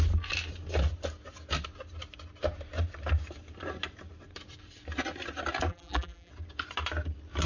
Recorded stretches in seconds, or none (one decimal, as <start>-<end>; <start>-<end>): 0.0-5.7; 6.3-7.5